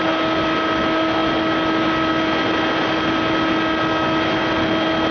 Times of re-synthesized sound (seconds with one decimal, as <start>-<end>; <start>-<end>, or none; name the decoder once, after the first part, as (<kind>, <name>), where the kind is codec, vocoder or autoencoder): none